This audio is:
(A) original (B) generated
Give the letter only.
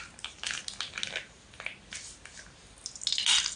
A